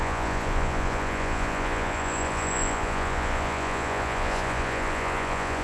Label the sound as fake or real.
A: fake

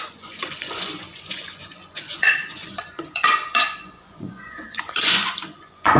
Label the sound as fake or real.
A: fake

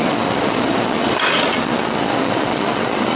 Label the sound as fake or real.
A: fake